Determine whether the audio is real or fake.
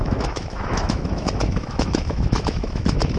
fake